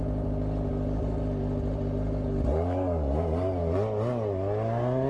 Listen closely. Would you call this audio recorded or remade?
recorded